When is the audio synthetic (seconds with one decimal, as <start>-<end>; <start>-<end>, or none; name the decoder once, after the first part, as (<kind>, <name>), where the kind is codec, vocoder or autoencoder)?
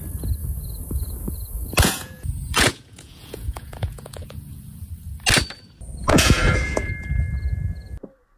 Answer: 0.4-4.9 (vocoder, Vocos); 6.0-6.9